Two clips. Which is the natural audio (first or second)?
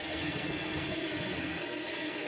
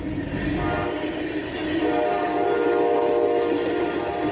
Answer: second